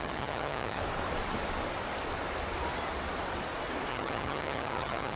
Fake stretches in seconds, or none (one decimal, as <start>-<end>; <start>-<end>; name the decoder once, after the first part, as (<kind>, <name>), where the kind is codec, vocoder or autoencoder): 0.0-0.8 (vocoder, HiFi-GAN); 3.9-5.2